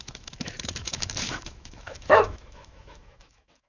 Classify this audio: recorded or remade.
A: remade